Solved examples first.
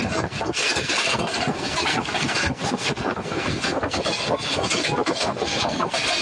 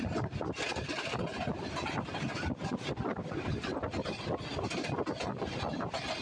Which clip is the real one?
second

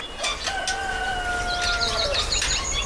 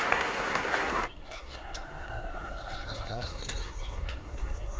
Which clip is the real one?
first